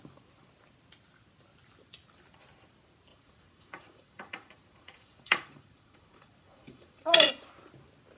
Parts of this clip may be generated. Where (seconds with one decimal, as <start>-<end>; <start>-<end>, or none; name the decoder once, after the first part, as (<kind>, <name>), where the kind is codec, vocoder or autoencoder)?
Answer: 3.1-7.3 (vocoder, Vocos)